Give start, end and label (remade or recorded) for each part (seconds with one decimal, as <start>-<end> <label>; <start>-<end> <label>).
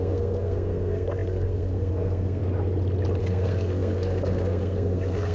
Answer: 0.0-2.4 remade; 2.4-3.2 recorded; 3.2-5.3 remade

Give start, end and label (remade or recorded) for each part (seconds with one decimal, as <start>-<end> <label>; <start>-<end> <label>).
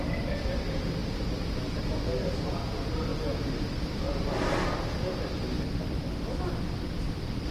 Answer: 0.0-3.1 recorded; 3.1-4.4 remade; 4.4-7.5 recorded